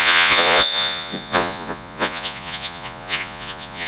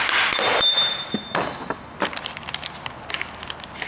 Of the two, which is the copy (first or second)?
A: first